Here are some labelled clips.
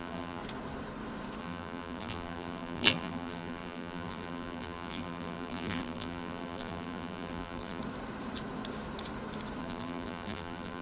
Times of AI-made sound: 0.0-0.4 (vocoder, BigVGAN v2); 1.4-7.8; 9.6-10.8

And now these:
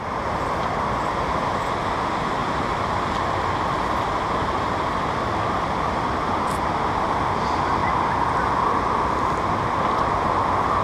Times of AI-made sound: none